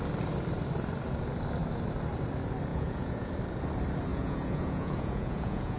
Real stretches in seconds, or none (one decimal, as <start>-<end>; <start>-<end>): 0.0-2.7; 3.3-4.1